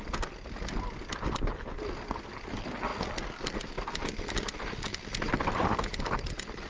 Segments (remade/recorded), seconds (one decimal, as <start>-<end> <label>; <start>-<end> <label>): 0.0-6.7 recorded